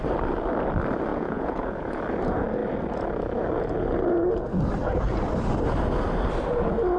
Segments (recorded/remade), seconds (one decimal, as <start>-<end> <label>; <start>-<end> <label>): 0.0-1.1 recorded; 1.1-2.0 remade; 2.0-7.0 recorded